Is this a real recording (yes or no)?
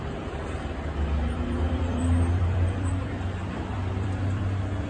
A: no